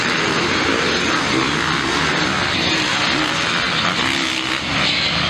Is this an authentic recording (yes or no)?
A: yes